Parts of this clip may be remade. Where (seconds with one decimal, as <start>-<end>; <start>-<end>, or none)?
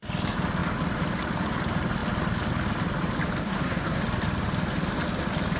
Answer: 3.4-4.0